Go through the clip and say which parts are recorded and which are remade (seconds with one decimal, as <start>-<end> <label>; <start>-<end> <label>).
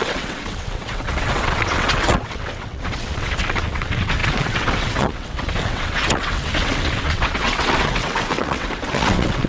0.0-9.5 remade